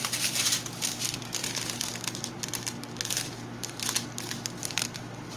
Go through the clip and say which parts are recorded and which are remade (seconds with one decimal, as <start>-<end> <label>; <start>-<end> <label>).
0.0-5.4 recorded